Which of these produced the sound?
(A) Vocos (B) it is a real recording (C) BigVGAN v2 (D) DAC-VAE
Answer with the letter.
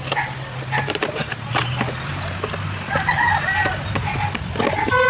B